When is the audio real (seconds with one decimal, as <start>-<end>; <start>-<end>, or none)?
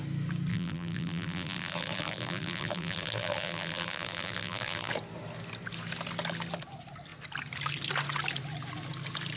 0.0-0.5; 4.9-9.4